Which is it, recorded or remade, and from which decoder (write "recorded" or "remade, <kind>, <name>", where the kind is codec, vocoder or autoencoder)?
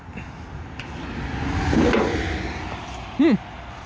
recorded